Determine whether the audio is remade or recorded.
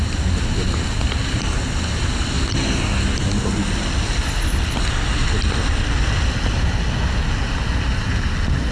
recorded